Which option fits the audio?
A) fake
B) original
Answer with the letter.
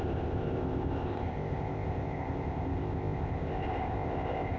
A